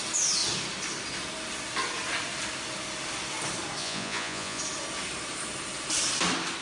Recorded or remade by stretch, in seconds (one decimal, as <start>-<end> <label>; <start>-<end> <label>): 0.0-3.8 recorded; 3.8-4.6 remade; 4.6-6.6 recorded

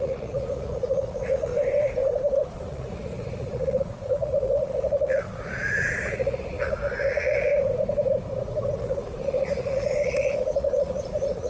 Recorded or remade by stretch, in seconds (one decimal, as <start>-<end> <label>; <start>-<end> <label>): 0.0-1.5 remade; 1.5-2.5 recorded; 2.5-7.5 remade; 7.5-8.8 recorded; 8.8-11.5 remade

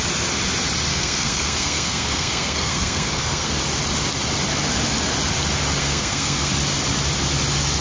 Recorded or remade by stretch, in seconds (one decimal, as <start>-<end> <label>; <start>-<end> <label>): 0.0-0.9 recorded; 0.9-3.6 remade; 3.6-5.8 recorded; 5.8-6.5 remade; 6.5-7.8 recorded